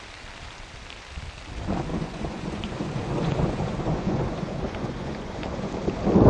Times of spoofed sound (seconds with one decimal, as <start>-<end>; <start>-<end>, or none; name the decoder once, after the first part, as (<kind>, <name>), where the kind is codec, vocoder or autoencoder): 1.9-5.7 (vocoder, Vocos)